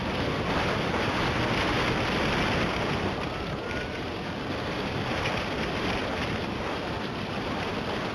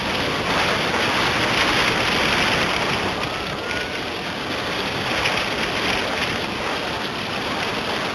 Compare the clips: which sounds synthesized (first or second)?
first